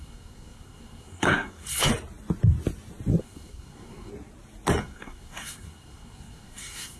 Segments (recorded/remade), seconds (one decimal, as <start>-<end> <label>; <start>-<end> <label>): 0.0-1.9 remade; 1.9-3.2 recorded; 3.2-4.1 remade; 4.1-4.8 recorded; 4.8-7.0 remade